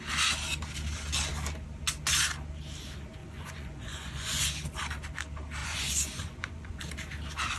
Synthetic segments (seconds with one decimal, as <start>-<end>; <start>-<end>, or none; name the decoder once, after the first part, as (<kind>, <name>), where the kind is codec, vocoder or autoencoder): 3.2-4.5 (vocoder, Vocos); 5.6-6.8